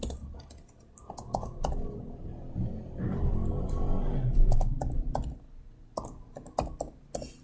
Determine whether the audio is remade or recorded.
recorded